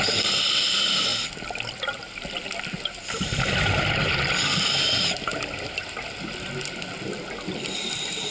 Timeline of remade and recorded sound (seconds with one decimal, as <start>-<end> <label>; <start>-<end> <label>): 0.0-8.3 recorded